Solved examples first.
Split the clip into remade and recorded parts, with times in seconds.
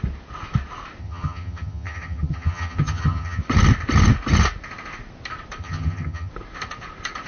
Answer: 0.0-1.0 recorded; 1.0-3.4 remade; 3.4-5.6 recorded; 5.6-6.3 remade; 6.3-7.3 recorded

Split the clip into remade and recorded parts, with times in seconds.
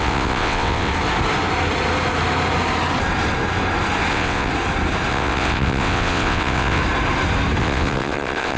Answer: 0.0-0.9 remade; 0.9-4.1 recorded; 4.1-4.5 remade; 4.5-5.1 recorded; 5.1-6.8 remade; 6.8-7.6 recorded; 7.6-8.6 remade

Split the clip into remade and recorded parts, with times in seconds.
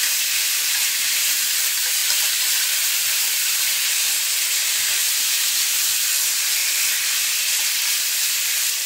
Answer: 0.0-6.6 remade; 6.6-7.9 recorded; 7.9-8.9 remade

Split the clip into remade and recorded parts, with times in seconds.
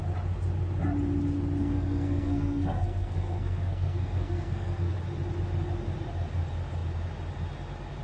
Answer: 0.0-1.6 recorded; 1.6-4.9 remade; 4.9-8.0 recorded